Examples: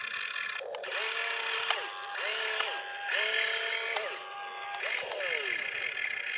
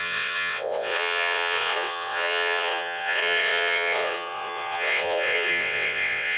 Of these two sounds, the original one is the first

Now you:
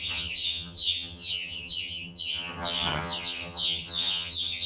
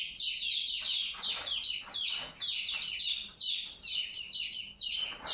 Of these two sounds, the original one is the second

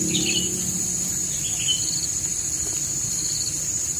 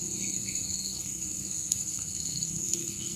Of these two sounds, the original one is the first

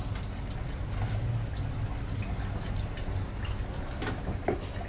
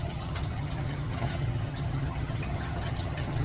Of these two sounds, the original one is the first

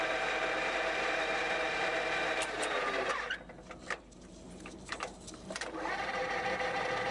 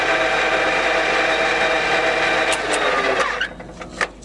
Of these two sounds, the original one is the second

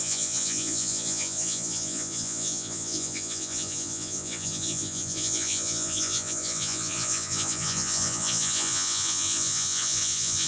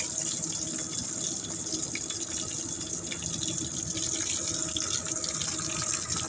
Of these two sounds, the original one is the second